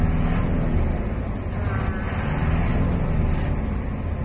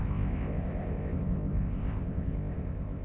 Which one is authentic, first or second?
first